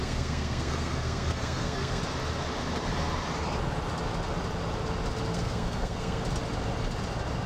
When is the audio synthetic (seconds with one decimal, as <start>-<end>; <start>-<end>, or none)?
0.0-2.0; 5.3-6.2